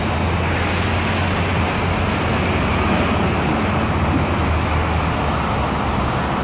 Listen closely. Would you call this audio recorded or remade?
recorded